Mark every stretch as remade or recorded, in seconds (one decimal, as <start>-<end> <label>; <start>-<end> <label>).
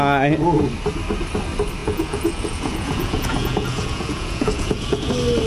0.0-1.8 recorded; 1.8-5.1 remade; 5.1-5.5 recorded